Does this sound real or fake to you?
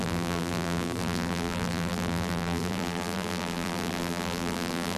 fake